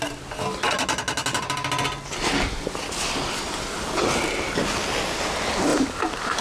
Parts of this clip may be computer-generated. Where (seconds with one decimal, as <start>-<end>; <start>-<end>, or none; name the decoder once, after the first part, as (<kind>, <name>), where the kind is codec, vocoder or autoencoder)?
5.7-6.4 (vocoder, BigVGAN v2)